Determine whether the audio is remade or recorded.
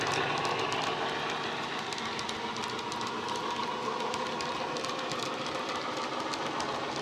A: recorded